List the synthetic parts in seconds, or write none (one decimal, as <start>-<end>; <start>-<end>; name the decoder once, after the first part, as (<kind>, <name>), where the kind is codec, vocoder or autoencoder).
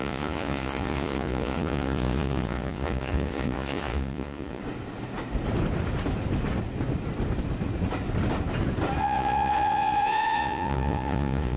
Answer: 0.0-4.6 (vocoder, Vocos); 9.0-11.6